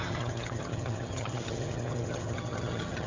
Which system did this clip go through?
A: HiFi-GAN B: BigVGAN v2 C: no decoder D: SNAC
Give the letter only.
A